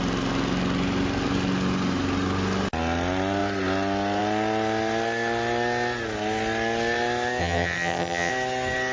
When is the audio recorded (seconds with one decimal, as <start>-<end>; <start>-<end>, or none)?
0.0-7.4; 8.3-8.9